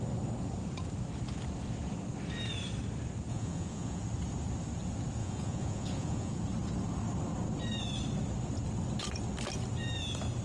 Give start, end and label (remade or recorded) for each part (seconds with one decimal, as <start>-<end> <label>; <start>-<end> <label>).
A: 0.0-3.3 recorded; 3.3-4.0 remade; 4.0-5.2 recorded; 5.2-6.4 remade; 6.4-10.4 recorded